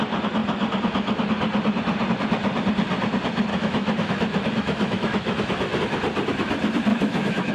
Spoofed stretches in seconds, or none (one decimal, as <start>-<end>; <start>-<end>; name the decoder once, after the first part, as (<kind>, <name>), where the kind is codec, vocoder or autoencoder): 3.5-5.8 (autoencoder, DAC-VAE); 6.9-7.5